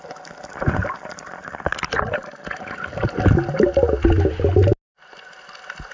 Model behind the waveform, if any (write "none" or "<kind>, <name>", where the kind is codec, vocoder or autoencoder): none